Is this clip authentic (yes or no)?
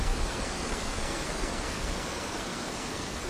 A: no